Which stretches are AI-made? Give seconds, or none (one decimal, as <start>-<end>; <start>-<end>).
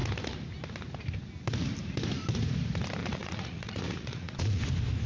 3.0-4.6